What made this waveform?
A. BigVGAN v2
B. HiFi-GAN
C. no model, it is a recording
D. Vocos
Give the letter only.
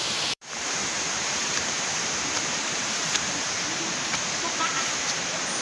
A